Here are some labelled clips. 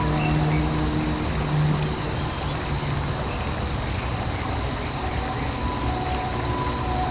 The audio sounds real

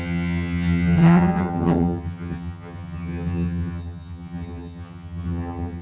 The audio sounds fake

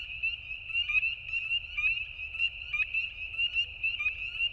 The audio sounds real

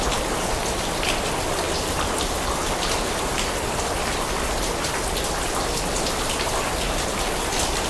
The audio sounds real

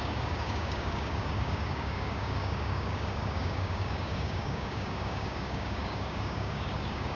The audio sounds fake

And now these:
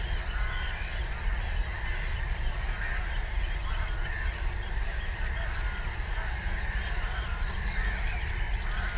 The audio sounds real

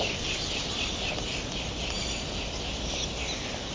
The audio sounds real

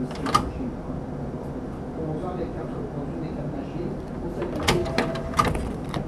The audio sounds real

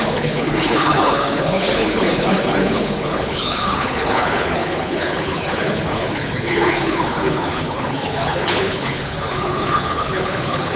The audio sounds fake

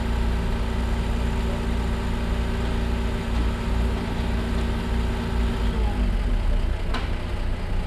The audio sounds real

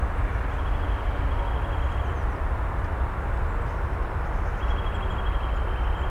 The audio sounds real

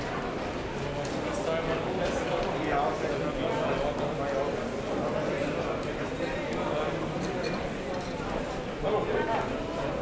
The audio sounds real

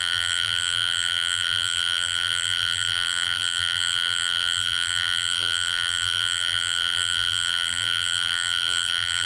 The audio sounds fake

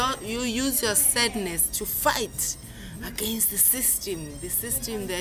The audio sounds real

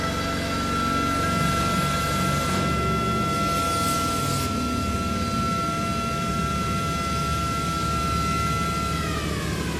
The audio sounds real